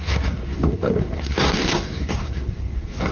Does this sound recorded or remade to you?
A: remade